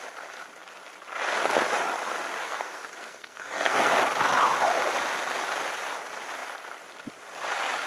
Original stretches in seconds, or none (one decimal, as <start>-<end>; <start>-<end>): 0.0-2.4; 3.9-7.9